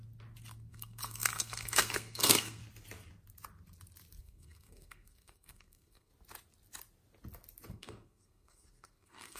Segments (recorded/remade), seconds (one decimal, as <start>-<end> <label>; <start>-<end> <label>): 0.0-0.7 recorded; 0.7-2.6 remade; 2.6-4.2 recorded; 4.2-6.1 remade; 6.1-7.7 recorded; 7.7-9.4 remade